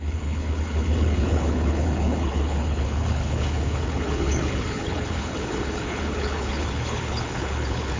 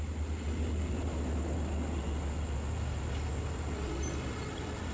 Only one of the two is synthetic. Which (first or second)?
first